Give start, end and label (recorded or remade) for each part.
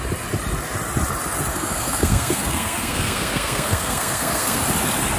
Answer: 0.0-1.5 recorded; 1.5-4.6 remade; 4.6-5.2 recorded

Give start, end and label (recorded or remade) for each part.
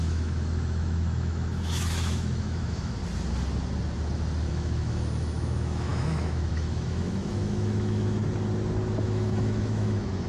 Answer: 0.0-3.0 remade; 3.0-4.5 recorded; 4.5-8.2 remade; 8.2-9.0 recorded; 9.0-10.3 remade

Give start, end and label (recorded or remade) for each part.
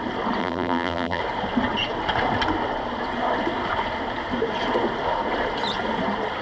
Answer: 0.0-0.4 recorded; 0.4-1.2 remade; 1.2-6.4 recorded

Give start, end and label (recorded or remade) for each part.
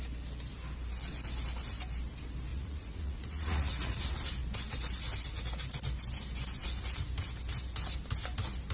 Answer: 0.0-2.5 recorded; 2.5-4.0 remade; 4.0-8.7 recorded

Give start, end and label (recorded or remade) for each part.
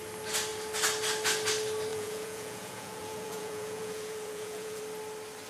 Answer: 0.0-1.9 recorded; 1.9-4.8 remade; 4.8-5.5 recorded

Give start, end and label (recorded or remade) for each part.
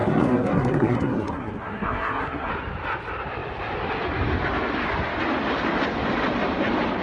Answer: 0.0-2.5 remade; 2.5-7.0 recorded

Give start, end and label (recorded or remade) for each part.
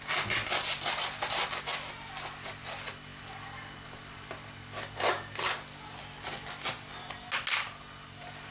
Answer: 0.0-8.5 recorded